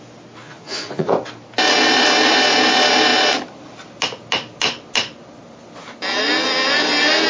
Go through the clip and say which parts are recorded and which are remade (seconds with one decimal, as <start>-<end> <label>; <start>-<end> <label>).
0.0-0.4 recorded; 0.4-1.1 remade; 1.1-7.3 recorded